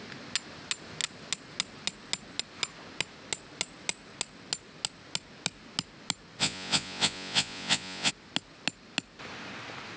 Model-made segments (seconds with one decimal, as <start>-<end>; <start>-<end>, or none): 6.4-8.1